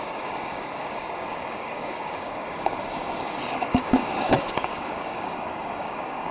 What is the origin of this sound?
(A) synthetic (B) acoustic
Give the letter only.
A